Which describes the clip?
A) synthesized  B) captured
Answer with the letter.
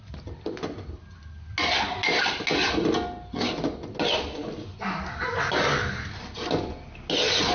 B